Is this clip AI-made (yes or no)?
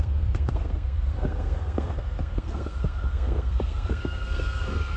yes